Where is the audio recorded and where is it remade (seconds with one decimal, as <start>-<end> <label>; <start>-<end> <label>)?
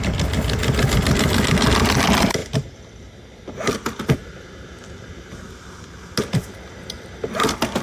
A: 0.0-7.8 recorded